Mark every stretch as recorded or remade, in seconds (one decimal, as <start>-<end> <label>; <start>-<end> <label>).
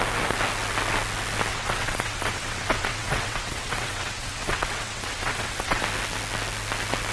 0.0-1.5 recorded; 1.5-5.8 remade; 5.8-7.1 recorded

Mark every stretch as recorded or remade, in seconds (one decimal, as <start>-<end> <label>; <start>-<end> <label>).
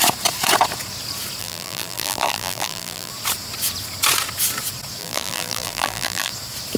0.0-1.4 recorded; 1.4-3.1 remade; 3.1-5.0 recorded; 5.0-6.3 remade; 6.3-6.8 recorded